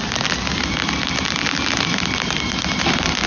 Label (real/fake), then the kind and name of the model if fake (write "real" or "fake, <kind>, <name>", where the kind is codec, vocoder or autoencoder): real